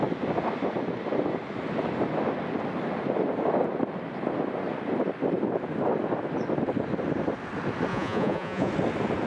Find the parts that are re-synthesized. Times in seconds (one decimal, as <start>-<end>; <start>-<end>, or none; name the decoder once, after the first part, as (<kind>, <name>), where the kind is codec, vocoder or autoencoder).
7.9-8.7 (vocoder, Vocos)